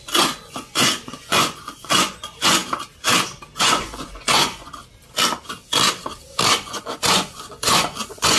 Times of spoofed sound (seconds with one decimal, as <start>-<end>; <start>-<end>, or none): 0.0-2.6; 3.6-4.7; 6.5-8.4